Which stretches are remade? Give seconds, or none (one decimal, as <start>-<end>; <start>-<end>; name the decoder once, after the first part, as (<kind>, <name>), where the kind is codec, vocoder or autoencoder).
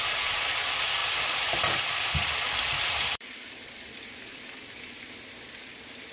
1.0-4.7 (vocoder, BigVGAN v2)